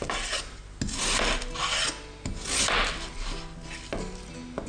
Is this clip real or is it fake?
real